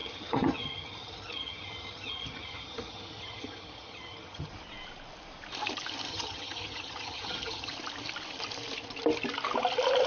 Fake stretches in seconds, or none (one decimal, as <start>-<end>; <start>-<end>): 0.0-4.5; 6.1-7.7